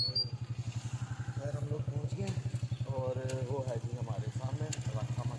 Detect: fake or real real